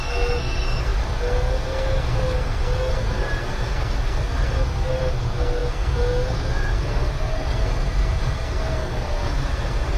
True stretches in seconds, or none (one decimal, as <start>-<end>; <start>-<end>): none